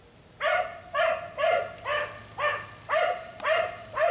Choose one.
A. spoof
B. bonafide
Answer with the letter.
B